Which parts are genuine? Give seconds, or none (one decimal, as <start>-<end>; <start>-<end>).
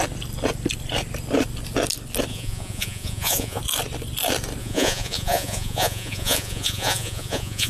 0.0-2.3; 3.6-4.6